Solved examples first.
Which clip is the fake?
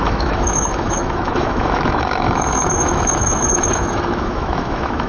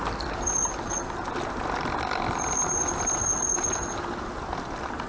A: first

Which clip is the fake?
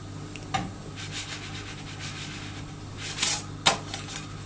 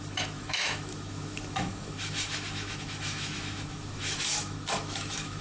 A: second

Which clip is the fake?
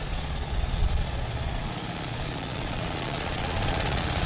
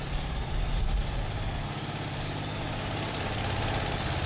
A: first